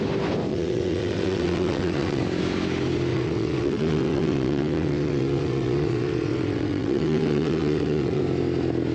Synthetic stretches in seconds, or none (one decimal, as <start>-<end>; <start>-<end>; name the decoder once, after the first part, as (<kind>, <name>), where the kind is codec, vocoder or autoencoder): 0.5-2.2 (vocoder, WaveNeXt); 3.1-8.2